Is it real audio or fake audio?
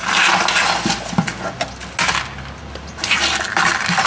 real